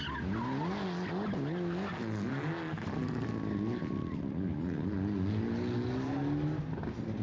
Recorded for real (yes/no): yes